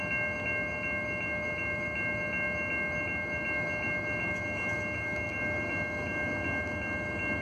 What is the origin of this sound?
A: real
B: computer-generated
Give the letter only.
A